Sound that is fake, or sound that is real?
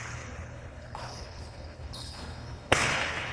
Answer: fake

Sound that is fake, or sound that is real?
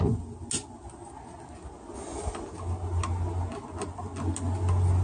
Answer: real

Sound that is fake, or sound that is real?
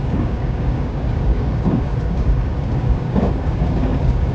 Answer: fake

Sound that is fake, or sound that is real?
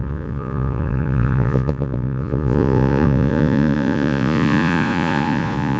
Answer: fake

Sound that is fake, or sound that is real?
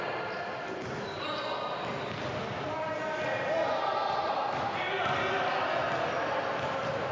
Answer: real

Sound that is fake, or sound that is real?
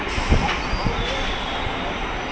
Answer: real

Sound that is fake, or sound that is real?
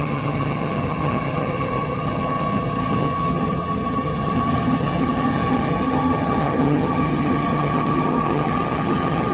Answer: fake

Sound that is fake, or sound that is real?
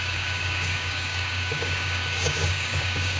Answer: fake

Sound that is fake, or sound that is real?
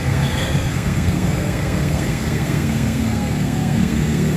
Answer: fake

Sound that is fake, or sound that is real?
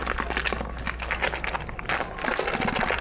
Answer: real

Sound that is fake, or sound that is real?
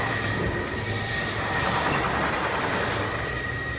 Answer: real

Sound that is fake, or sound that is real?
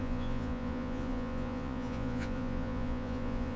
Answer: fake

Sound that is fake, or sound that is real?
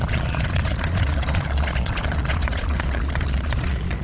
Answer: fake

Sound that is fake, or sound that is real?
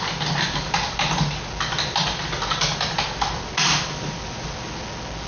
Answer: real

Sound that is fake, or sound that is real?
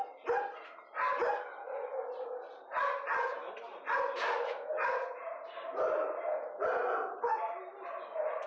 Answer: real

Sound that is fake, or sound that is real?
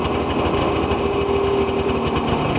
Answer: real